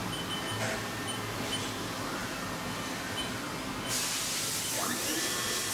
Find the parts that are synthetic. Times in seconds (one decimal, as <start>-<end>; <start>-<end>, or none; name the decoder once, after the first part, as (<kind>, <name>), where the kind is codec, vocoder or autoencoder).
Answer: none